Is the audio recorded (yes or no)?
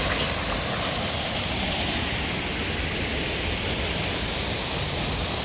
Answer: yes